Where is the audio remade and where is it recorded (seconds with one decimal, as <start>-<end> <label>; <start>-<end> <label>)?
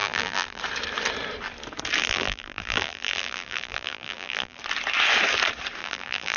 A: 0.0-0.6 remade; 0.6-2.0 recorded; 2.0-4.6 remade; 4.6-5.8 recorded; 5.8-6.4 remade